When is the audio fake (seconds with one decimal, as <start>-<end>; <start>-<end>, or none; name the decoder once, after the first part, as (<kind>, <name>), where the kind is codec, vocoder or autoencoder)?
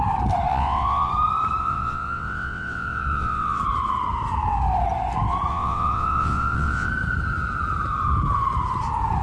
0.5-1.1 (vocoder, WaveNeXt); 1.6-3.6; 5.5-6.9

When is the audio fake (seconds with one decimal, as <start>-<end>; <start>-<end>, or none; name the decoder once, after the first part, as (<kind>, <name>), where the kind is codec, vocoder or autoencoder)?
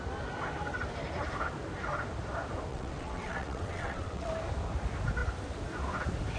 2.7-4.3 (vocoder, WaveNeXt)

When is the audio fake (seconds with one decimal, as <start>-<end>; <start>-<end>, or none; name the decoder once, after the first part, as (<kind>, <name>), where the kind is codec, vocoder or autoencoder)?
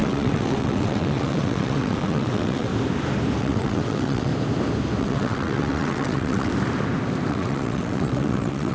0.0-2.7 (vocoder, WaveNeXt); 3.4-4.3; 5.0-6.5; 7.3-8.7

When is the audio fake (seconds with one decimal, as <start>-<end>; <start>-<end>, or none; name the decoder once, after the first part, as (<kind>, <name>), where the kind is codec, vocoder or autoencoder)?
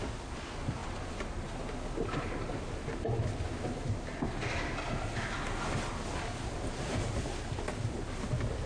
none